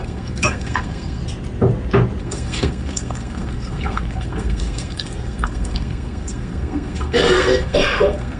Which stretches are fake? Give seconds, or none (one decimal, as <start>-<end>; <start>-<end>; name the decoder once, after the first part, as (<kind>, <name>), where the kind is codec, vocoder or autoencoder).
0.0-1.2 (codec, SNAC); 2.2-8.4